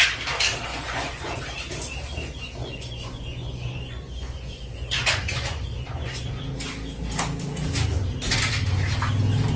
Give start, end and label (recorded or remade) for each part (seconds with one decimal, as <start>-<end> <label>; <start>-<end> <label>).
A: 0.0-0.7 recorded; 0.7-1.4 remade; 1.4-2.6 recorded; 2.6-6.4 remade; 6.4-9.6 recorded